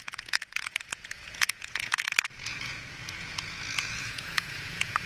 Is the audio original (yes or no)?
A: no